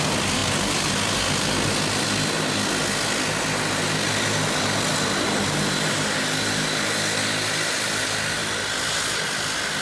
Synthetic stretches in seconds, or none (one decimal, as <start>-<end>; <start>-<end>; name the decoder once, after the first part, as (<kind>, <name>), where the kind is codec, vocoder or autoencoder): none